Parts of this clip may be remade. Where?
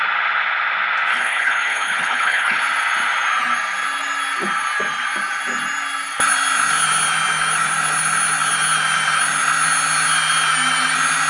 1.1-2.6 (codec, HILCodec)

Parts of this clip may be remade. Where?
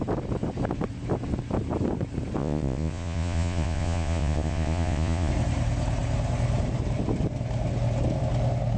2.4-5.3 (vocoder, Vocos)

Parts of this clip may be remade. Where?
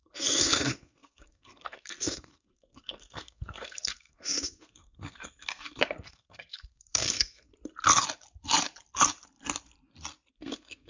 0.0-7.5 (codec, SNAC); 10.3-10.9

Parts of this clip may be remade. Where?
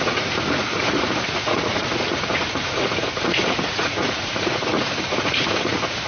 0.0-6.1 (vocoder, Vocos)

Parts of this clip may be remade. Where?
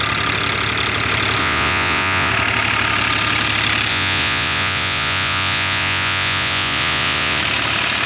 1.4-2.3 (vocoder, Vocos); 3.9-7.4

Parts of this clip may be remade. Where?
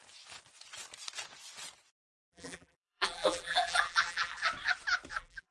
2.2-4.4 (vocoder, BigVGAN v2); 5.1-5.5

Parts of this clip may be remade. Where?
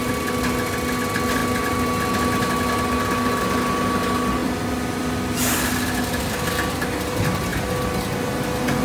4.4-5.5 (vocoder, BigVGAN v2)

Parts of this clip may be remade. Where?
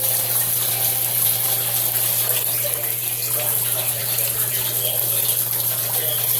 none